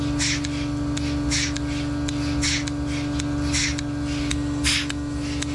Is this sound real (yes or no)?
yes